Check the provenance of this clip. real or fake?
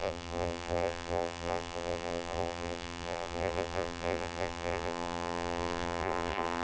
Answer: fake